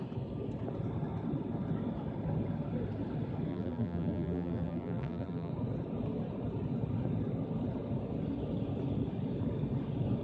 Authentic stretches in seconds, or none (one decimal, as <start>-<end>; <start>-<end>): 0.0-3.5; 5.5-10.2